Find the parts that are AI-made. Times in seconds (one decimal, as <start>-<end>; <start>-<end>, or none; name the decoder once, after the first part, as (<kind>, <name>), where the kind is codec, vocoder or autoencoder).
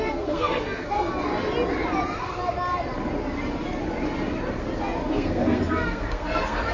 0.0-1.1 (codec, SNAC); 5.1-6.7